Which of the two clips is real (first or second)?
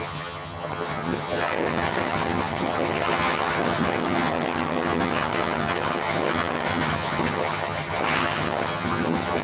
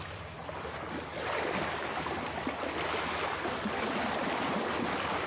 second